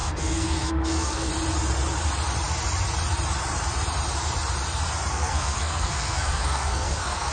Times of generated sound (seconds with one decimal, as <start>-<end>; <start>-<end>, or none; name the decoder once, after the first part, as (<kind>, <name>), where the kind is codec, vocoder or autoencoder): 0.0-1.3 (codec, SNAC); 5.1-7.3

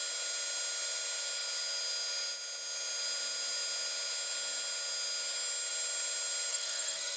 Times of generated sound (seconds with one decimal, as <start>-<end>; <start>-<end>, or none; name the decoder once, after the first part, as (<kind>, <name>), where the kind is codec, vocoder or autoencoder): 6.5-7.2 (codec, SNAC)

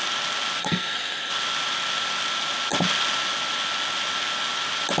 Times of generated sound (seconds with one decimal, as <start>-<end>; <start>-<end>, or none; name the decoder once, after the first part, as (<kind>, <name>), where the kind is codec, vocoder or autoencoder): 0.6-1.3 (codec, SNAC)

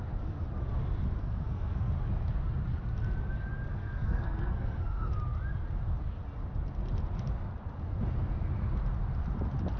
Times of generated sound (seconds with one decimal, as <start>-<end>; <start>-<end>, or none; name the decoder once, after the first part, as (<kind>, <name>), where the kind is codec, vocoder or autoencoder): 1.2-1.9 (codec, SNAC); 3.7-5.1